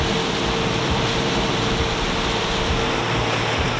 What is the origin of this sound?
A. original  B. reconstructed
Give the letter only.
A